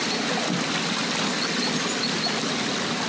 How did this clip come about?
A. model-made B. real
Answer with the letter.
B